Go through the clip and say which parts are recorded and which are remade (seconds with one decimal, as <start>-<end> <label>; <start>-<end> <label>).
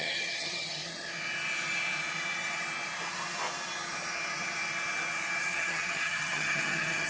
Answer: 0.0-1.1 remade; 1.1-5.4 recorded; 5.4-7.1 remade